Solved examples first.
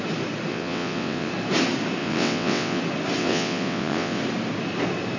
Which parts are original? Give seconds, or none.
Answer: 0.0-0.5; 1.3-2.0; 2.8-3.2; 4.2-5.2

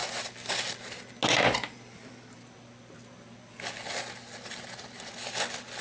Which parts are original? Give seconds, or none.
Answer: 0.0-5.8

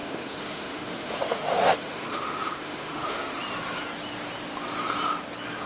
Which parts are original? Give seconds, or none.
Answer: 3.4-5.7

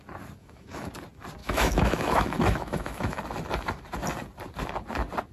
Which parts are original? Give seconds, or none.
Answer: 0.0-0.4; 0.9-1.4; 3.2-5.3

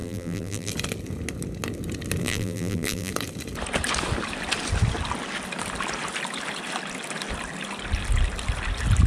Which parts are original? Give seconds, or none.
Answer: 0.7-2.2; 3.1-9.1

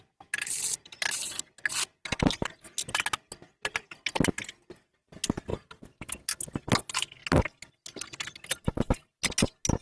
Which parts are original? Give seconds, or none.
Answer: 0.0-9.8

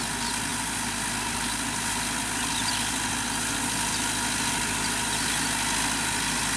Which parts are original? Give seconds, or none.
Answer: 0.0-6.6